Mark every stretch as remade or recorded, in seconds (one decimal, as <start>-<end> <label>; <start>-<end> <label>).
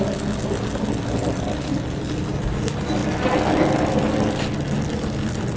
0.0-5.6 recorded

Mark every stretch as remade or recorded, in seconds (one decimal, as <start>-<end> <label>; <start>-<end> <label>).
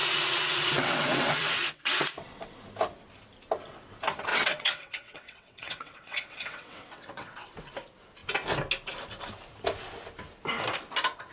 0.0-2.6 remade; 2.6-4.3 recorded; 4.3-7.6 remade; 7.6-11.3 recorded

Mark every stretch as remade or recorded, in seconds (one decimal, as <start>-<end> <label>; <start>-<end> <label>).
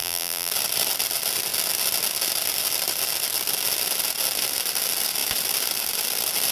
0.0-0.5 remade; 0.5-6.5 recorded